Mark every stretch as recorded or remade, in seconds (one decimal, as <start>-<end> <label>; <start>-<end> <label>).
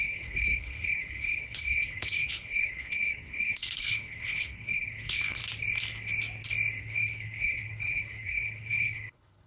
0.0-5.4 remade; 5.4-6.8 recorded; 6.8-9.5 remade